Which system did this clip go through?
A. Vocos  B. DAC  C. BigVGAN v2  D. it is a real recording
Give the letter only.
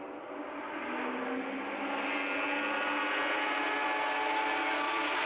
D